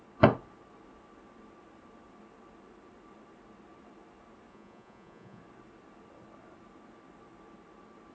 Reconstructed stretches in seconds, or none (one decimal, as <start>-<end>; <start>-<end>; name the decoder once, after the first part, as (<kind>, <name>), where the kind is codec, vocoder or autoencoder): 4.5-5.4 (vocoder, Vocos)